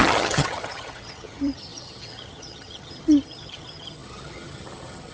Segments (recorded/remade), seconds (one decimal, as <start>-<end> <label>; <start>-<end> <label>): 0.0-5.1 remade